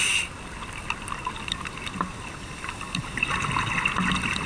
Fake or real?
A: real